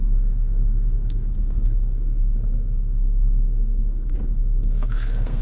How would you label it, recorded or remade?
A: remade